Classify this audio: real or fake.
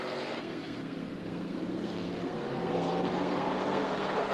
fake